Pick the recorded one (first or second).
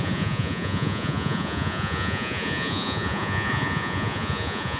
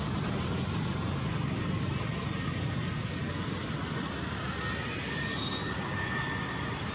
second